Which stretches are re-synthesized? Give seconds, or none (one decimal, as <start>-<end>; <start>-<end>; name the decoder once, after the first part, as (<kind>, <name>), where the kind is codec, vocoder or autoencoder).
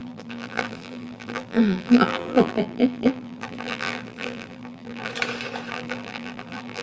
0.0-5.1 (vocoder, BigVGAN v2); 5.7-6.8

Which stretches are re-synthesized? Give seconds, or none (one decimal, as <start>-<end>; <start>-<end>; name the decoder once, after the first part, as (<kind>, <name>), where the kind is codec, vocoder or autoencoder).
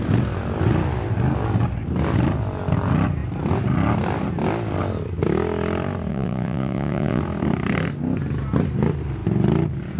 6.1-7.2 (vocoder, Vocos)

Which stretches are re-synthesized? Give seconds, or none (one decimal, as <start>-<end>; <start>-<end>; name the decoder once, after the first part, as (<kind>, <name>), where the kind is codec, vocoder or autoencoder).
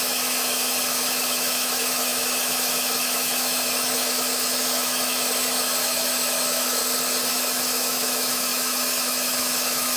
0.0-6.8 (autoencoder, DAC-VAE); 7.3-10.0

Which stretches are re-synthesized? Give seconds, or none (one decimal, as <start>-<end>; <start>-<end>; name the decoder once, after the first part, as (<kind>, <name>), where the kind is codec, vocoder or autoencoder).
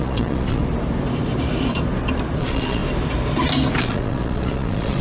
0.0-0.6 (vocoder, Vocos); 2.4-2.8; 3.8-5.0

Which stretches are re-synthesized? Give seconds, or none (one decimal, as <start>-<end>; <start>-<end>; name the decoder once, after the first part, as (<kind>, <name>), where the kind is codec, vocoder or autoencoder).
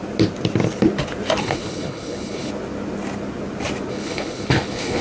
1.4-2.5 (codec, HILCodec); 3.9-5.0